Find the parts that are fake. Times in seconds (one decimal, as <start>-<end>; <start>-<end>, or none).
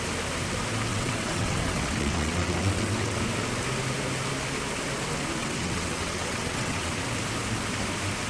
0.9-3.2; 5.4-7.0